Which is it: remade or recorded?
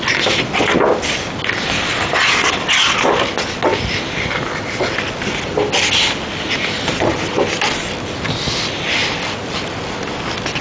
recorded